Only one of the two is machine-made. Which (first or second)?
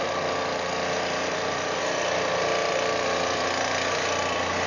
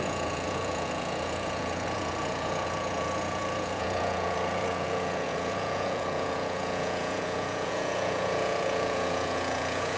second